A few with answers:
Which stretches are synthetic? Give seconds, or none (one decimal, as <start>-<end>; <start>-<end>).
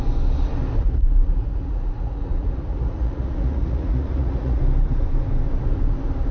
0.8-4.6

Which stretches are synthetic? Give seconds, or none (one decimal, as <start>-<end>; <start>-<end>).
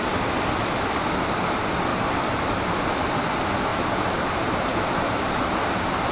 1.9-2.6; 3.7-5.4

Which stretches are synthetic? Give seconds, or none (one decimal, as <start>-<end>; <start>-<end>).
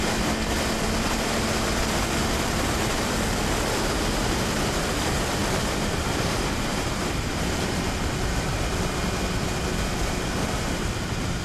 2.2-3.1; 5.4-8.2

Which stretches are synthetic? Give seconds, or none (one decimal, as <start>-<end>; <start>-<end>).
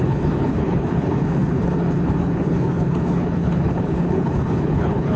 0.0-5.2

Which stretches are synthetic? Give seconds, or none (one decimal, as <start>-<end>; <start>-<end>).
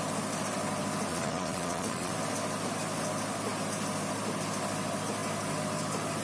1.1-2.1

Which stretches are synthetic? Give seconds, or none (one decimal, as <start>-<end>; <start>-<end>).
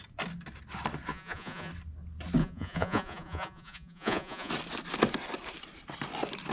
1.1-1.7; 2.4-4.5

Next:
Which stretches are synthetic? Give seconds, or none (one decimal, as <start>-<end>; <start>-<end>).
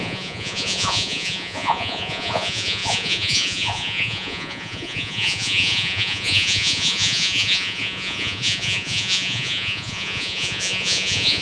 0.0-11.4